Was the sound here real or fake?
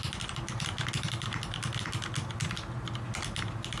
real